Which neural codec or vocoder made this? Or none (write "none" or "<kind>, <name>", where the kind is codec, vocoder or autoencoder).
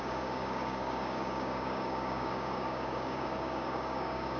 codec, DAC